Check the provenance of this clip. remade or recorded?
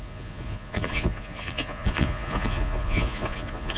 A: remade